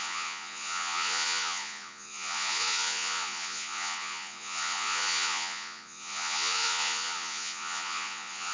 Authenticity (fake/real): fake